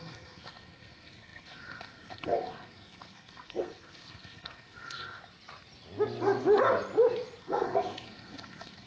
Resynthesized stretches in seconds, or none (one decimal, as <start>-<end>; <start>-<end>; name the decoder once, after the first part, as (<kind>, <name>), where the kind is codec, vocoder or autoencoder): 0.0-5.2 (codec, SNAC); 7.4-8.9

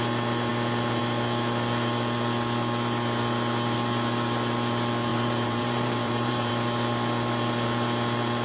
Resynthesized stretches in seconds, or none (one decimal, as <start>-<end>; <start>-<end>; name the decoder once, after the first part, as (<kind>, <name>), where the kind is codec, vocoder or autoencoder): 5.1-6.5 (vocoder, BigVGAN v2)

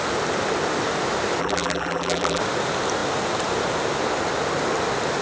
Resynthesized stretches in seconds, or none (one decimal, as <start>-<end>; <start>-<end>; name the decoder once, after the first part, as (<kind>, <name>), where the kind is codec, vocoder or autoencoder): 1.4-2.4 (vocoder, BigVGAN v2)

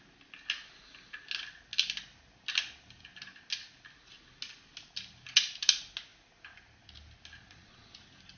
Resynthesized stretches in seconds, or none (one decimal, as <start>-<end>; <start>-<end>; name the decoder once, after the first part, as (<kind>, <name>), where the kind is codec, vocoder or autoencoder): 7.4-8.0 (vocoder, Vocos)

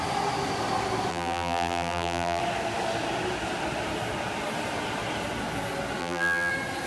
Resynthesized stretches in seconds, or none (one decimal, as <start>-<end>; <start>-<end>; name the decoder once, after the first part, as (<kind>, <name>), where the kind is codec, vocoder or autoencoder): 1.1-2.4 (vocoder, BigVGAN v2); 6.0-6.5